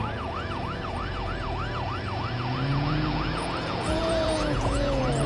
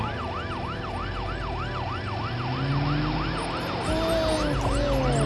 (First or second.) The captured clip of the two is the second